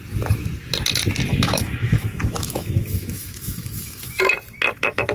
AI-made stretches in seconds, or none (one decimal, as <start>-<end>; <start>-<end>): 1.3-4.2